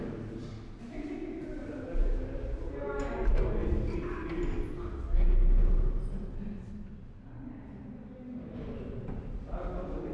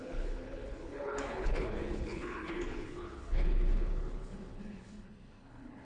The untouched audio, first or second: first